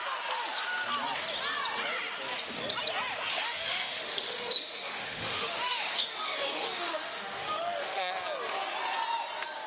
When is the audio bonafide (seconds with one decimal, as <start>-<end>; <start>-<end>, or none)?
0.0-3.3; 8.1-9.7